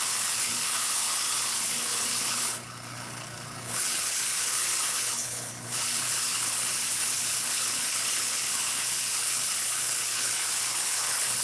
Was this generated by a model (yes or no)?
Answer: yes